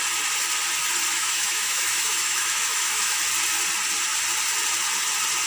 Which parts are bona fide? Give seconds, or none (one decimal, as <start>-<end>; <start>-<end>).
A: 0.0-1.1; 3.2-5.5